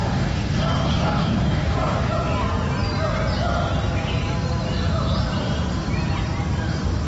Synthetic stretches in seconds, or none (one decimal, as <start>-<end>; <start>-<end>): 0.0-2.1